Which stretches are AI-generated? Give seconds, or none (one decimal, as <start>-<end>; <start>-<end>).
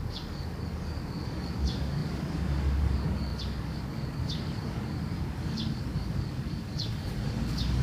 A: 0.0-7.8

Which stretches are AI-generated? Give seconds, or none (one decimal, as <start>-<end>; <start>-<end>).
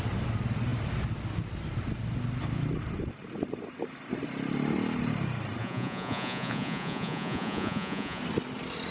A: 5.6-8.2